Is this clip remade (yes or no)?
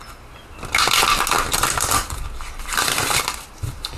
no